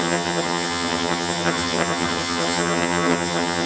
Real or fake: fake